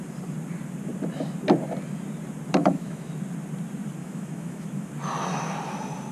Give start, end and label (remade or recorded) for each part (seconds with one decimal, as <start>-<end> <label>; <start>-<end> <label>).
0.0-2.6 recorded; 2.6-3.1 remade; 3.1-4.0 recorded; 4.0-4.9 remade; 4.9-6.1 recorded